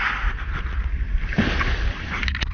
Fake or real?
real